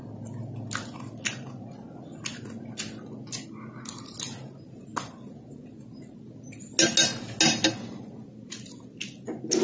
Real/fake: real